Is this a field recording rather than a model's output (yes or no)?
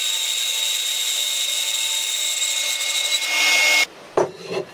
yes